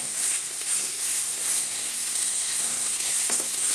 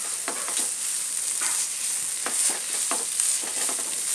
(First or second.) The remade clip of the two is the first